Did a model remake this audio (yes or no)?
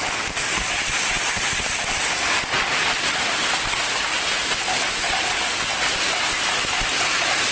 no